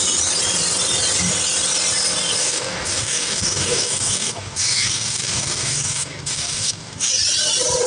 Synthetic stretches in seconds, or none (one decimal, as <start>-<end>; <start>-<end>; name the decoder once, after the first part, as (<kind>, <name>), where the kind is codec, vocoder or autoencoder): 2.4-7.1 (codec, DAC)